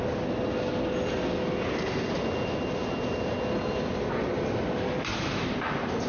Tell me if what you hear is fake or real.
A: real